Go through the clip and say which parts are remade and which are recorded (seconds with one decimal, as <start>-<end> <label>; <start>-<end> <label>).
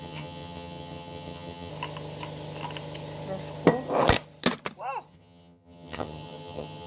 0.0-1.7 remade; 1.7-5.1 recorded; 5.1-6.9 remade